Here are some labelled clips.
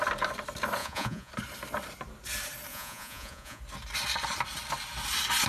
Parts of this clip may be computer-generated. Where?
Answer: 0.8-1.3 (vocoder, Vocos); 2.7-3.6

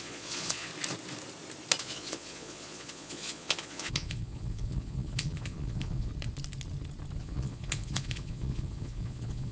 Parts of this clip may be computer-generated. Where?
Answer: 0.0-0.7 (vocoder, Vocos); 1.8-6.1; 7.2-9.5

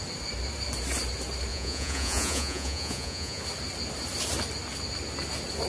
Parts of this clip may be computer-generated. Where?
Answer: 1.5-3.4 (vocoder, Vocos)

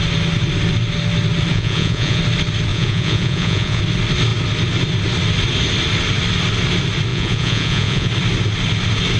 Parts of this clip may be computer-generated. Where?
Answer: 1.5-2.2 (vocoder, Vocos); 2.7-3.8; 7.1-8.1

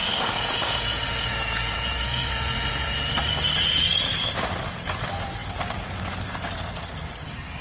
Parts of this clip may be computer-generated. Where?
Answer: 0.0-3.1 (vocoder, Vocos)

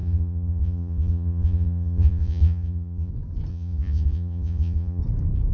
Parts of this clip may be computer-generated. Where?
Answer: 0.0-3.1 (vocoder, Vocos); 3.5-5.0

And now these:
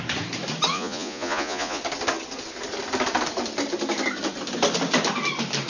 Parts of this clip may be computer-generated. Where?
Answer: 0.7-1.8 (vocoder, Vocos)